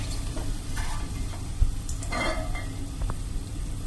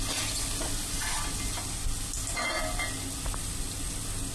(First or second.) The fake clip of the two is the first